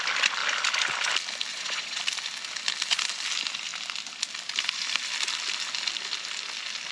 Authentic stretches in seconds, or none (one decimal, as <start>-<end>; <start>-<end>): 0.0-1.5; 2.0-6.9